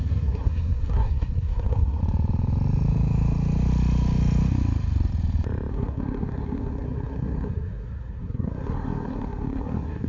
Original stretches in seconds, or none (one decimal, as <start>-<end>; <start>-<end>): 2.0-5.7